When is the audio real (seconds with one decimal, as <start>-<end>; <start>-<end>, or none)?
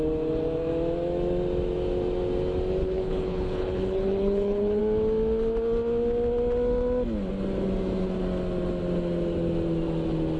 0.0-2.8; 4.8-10.4